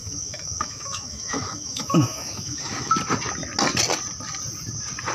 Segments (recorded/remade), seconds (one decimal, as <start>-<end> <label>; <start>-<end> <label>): 0.0-2.9 remade; 2.9-5.1 recorded